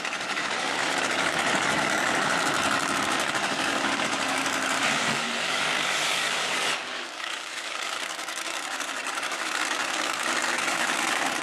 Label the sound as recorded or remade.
remade